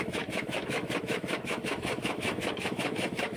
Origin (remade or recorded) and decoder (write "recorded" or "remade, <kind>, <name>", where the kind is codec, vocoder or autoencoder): remade, autoencoder, DAC-VAE